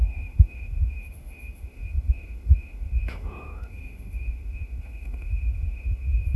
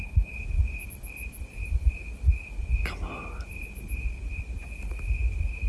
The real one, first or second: second